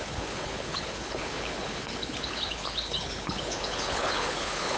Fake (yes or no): yes